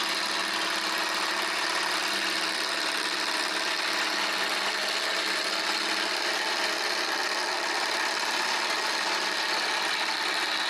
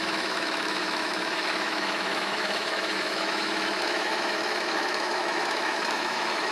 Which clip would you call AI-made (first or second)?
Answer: second